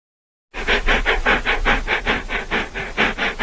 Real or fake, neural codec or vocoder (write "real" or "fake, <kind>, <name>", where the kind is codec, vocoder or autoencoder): real